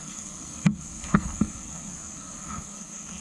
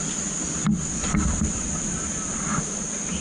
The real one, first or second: second